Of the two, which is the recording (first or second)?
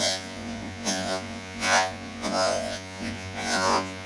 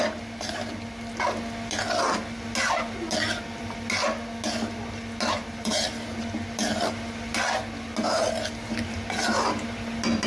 second